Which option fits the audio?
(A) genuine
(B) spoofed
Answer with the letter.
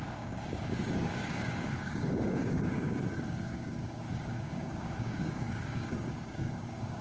B